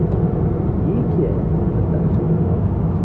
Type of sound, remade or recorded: recorded